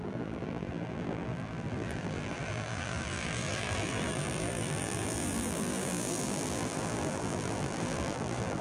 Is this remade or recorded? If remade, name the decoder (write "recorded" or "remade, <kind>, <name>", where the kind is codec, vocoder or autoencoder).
remade, vocoder, BigVGAN v2